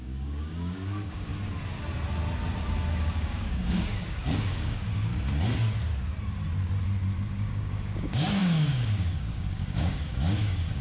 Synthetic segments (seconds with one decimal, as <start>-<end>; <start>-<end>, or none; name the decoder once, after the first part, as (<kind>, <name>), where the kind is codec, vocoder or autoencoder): 0.0-1.3 (codec, DAC); 2.9-5.1; 7.2-10.8